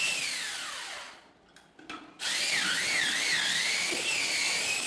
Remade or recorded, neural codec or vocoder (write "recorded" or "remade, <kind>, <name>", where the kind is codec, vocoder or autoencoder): recorded